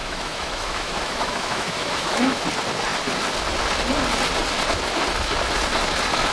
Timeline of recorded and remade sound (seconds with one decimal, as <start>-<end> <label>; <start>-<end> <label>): 0.0-2.4 remade; 2.4-6.3 recorded